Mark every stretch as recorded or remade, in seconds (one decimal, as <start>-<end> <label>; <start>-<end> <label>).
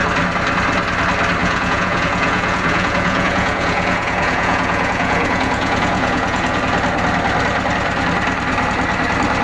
0.0-1.4 recorded; 1.4-6.6 remade; 6.6-9.4 recorded